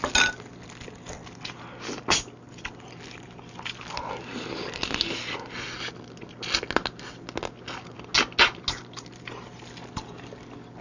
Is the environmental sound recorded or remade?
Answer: recorded